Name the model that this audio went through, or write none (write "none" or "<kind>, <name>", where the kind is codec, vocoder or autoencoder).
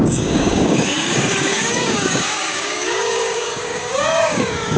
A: codec, DAC